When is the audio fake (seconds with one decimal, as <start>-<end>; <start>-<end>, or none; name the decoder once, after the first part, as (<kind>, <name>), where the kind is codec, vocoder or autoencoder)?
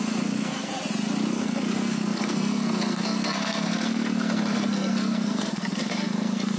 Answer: 0.0-0.7 (codec, SNAC); 1.3-6.6